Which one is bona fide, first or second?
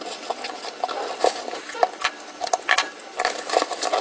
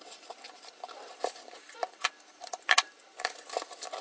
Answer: first